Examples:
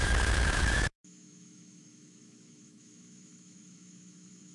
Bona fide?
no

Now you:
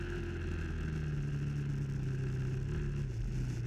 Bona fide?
yes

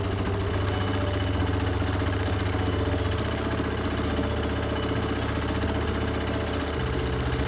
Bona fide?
yes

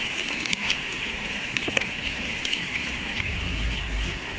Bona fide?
no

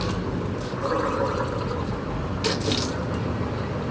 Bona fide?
yes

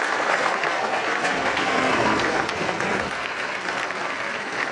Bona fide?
no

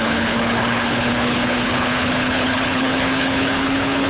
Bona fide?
no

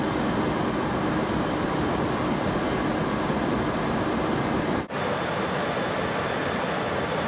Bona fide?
yes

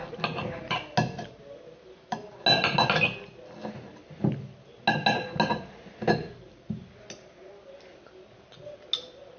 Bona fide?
yes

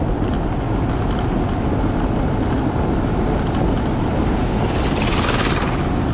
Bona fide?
yes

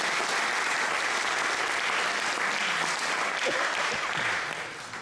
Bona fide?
yes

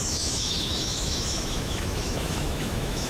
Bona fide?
no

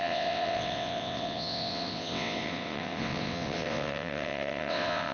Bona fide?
no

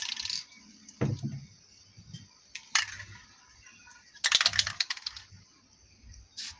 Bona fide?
yes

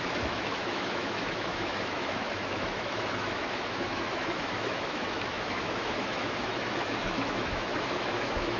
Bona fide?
no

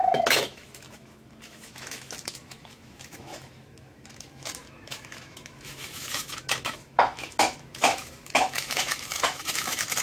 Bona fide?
no